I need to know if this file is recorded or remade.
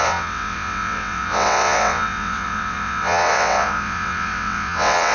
remade